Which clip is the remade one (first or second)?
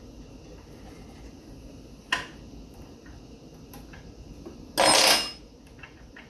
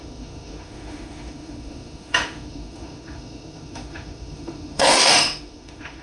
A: second